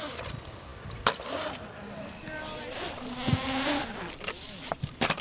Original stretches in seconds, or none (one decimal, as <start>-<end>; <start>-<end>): 0.0-5.2